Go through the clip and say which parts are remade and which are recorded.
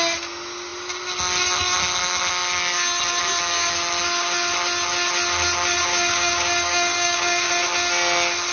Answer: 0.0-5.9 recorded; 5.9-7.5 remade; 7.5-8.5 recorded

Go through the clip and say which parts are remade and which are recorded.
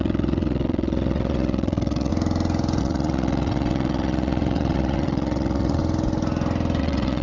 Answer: 0.0-2.1 remade; 2.1-2.8 recorded; 2.8-5.8 remade; 5.8-6.8 recorded; 6.8-7.2 remade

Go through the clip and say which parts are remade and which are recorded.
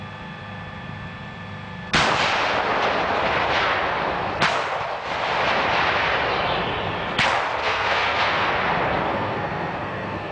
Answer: 0.0-7.6 recorded; 7.6-8.5 remade; 8.5-9.1 recorded; 9.1-10.3 remade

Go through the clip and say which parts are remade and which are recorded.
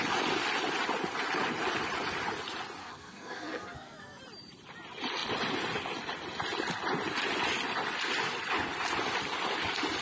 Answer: 0.0-2.8 recorded; 2.8-4.2 remade; 4.2-10.0 recorded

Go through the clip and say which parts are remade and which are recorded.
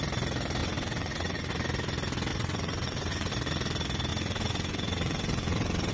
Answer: 0.0-0.6 recorded; 0.6-1.5 remade; 1.5-2.3 recorded; 2.3-3.3 remade; 3.3-4.1 recorded; 4.1-5.9 remade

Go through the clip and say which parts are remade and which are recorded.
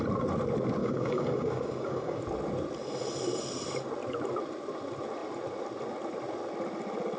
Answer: 0.0-0.8 recorded; 0.8-2.2 remade; 2.2-7.2 recorded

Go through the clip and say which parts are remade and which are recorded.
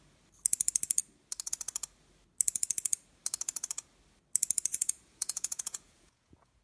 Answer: 0.0-4.7 recorded; 4.7-6.6 remade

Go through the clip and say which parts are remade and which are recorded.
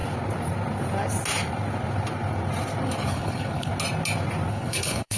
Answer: 0.0-3.1 recorded; 3.1-3.7 remade; 3.7-4.5 recorded; 4.5-5.2 remade